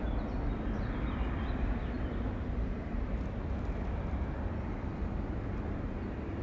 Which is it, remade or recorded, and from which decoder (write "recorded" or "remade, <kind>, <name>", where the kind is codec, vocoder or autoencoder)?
recorded